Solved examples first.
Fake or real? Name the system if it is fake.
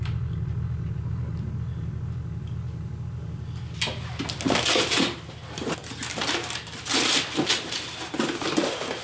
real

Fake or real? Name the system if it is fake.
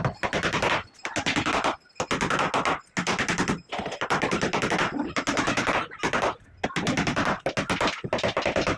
real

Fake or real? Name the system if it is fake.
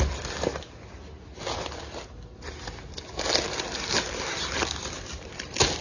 real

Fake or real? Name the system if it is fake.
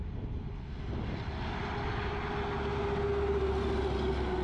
real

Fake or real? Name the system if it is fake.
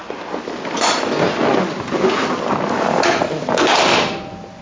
real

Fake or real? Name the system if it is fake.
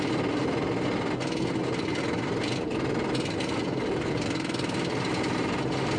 real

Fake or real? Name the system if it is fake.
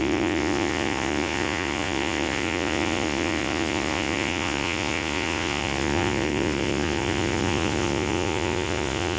fake, vocoder, Vocos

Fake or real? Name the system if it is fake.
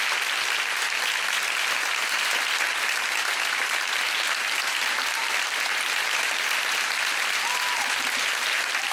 real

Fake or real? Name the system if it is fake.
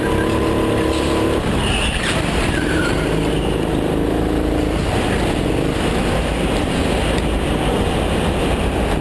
real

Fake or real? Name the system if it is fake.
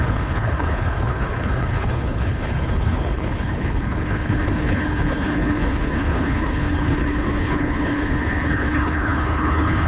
fake, codec, HILCodec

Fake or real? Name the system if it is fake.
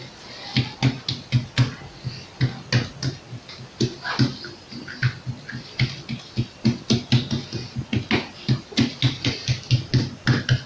real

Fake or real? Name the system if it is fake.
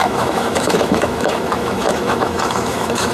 fake, autoencoder, DAC-VAE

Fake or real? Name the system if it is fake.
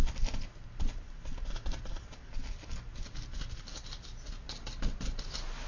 real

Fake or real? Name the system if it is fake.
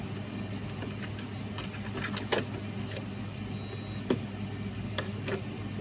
real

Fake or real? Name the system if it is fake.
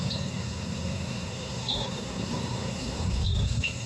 fake, codec, SNAC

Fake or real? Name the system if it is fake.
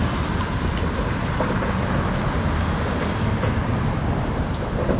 real